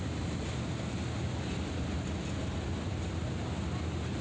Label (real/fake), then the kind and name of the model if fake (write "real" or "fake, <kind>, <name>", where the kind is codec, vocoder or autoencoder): real